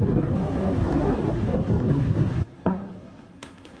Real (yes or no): no